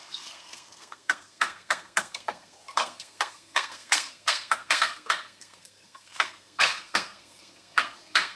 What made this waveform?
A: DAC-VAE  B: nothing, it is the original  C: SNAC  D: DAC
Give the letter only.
C